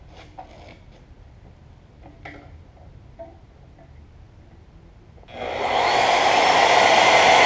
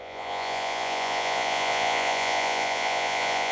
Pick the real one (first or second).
first